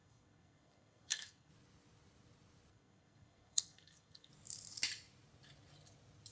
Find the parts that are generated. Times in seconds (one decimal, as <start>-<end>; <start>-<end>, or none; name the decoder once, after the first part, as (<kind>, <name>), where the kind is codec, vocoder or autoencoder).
0.0-1.5 (codec, SNAC); 2.7-4.3